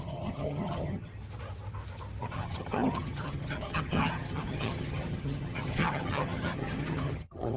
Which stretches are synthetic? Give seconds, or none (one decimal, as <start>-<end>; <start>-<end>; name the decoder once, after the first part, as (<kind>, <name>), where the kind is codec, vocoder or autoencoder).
0.0-1.1 (vocoder, HiFi-GAN); 2.2-7.6